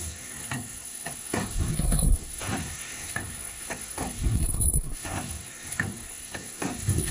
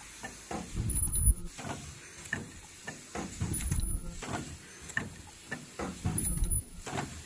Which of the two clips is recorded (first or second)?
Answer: second